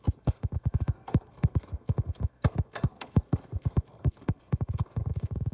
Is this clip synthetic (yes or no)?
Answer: yes